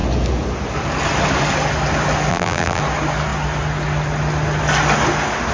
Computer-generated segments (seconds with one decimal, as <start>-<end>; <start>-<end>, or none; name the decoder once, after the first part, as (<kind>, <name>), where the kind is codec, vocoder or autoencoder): 2.3-2.8 (vocoder, BigVGAN v2)